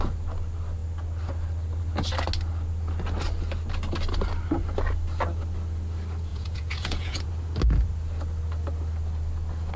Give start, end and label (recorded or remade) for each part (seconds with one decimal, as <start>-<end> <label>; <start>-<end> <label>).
0.0-6.3 recorded; 6.3-7.3 remade; 7.3-9.8 recorded

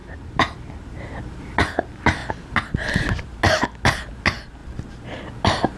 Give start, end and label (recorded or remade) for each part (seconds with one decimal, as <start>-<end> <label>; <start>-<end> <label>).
0.0-5.8 recorded

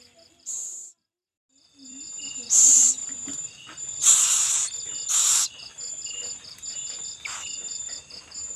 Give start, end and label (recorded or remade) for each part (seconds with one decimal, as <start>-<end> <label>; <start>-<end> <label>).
0.0-8.6 recorded

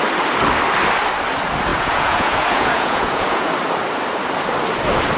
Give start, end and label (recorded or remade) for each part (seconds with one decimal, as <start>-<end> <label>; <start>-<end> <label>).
0.0-1.7 recorded; 1.7-3.5 remade; 3.5-5.2 recorded

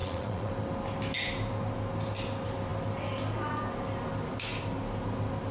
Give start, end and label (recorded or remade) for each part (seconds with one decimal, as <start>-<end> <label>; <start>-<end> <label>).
0.0-0.5 remade; 0.5-5.5 recorded

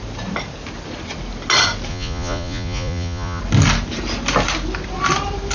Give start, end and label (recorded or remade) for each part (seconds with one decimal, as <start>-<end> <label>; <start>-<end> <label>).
0.0-1.9 recorded; 1.9-3.4 remade; 3.4-5.5 recorded

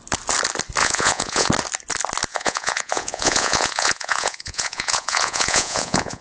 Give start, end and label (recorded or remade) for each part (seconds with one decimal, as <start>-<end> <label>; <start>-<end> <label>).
0.0-0.8 recorded; 0.8-1.5 remade; 1.5-2.3 recorded; 2.3-6.2 remade